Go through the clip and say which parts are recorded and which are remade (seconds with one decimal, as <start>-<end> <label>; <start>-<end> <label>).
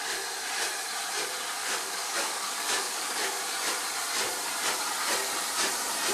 0.0-1.6 recorded; 1.6-3.4 remade; 3.4-6.1 recorded